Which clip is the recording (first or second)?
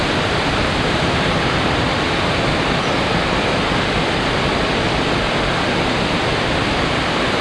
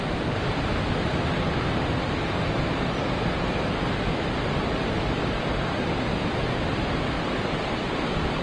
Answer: second